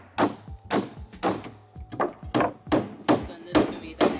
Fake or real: real